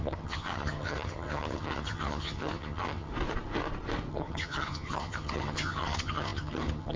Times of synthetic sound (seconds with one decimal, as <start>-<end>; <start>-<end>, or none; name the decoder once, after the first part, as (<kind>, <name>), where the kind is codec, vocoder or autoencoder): 0.0-3.1 (vocoder, HiFi-GAN); 4.1-7.0